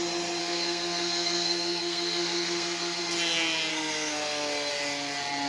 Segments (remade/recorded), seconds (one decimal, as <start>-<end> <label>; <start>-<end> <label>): 0.0-0.4 recorded; 0.4-3.0 remade; 3.0-3.7 recorded; 3.7-4.7 remade; 4.7-5.5 recorded